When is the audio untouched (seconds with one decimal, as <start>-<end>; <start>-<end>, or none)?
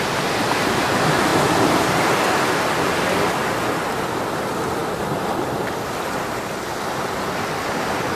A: 0.0-8.2